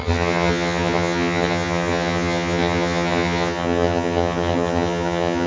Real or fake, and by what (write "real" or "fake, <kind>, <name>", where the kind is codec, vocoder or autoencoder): fake, vocoder, HiFi-GAN